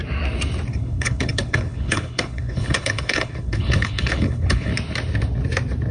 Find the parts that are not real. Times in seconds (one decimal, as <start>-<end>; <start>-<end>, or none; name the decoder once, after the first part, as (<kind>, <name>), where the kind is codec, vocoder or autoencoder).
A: 0.7-4.7 (codec, HILCodec)